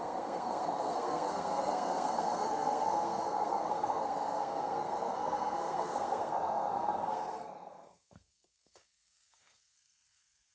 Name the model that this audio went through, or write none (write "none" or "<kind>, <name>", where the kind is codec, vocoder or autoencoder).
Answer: codec, SNAC